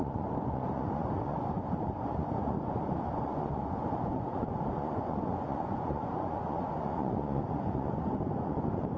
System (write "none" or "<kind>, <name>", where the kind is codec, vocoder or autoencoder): vocoder, Vocos